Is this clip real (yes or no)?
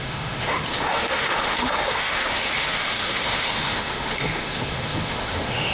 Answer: no